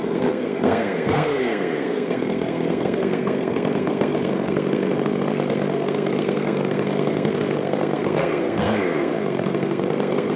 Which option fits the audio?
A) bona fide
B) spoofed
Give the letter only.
B